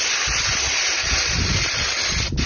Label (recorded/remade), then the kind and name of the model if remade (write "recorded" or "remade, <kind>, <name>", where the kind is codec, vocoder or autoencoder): recorded